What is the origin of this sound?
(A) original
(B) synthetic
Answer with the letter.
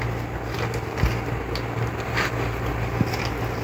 A